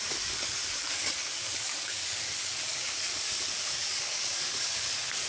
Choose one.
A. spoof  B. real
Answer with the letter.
A